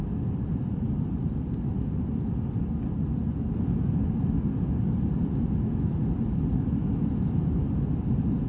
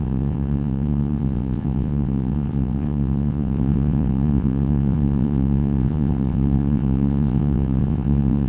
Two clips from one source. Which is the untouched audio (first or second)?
first